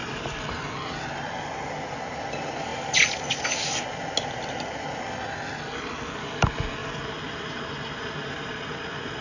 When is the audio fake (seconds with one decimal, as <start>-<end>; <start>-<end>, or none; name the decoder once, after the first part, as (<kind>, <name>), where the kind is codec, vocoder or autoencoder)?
6.8-9.2 (vocoder, BigVGAN v2)